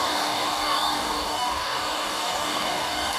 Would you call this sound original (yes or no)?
no